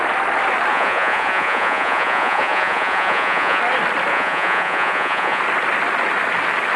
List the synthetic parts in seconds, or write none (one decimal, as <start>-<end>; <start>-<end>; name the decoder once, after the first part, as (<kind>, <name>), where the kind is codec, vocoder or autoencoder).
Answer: 0.7-3.6 (vocoder, Vocos); 4.1-5.4